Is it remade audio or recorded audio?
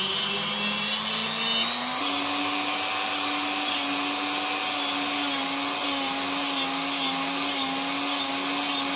recorded